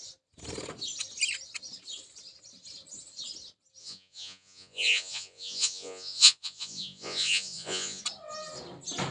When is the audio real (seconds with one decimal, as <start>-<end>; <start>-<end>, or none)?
0.0-3.8; 8.0-9.1